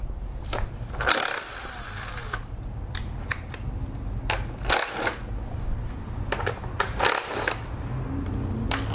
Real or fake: real